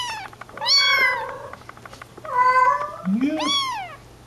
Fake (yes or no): no